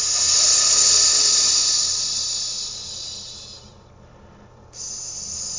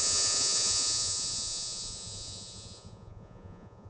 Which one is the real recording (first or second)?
first